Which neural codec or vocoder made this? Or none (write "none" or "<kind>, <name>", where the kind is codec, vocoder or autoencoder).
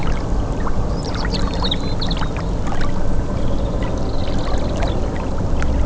none